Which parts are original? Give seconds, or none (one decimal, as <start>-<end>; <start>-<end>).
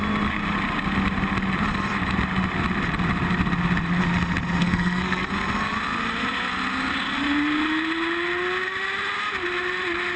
0.0-4.6; 5.3-10.2